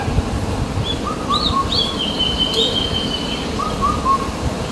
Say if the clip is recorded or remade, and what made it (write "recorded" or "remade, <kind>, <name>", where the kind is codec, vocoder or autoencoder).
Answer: recorded